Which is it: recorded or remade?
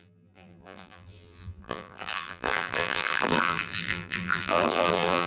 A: remade